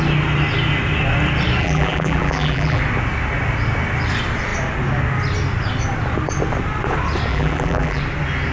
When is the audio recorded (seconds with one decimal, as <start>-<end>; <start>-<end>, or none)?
0.0-1.6; 2.8-7.3; 8.0-8.5